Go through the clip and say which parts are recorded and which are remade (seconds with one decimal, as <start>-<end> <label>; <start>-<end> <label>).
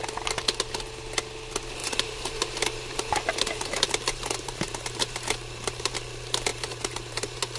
0.0-1.8 recorded; 1.8-5.9 remade; 5.9-6.5 recorded; 6.5-7.6 remade